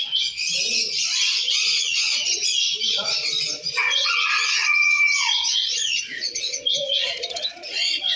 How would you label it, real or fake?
fake